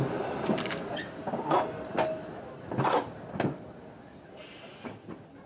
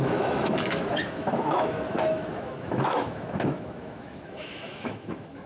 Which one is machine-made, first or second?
second